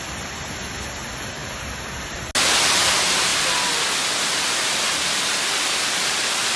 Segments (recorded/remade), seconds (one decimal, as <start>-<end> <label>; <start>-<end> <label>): 0.0-6.6 recorded